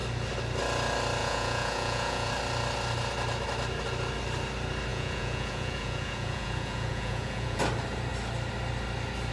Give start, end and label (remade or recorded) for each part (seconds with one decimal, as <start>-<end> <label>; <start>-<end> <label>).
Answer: 0.0-1.2 recorded; 1.2-2.3 remade; 2.3-4.9 recorded; 4.9-7.6 remade; 7.6-9.3 recorded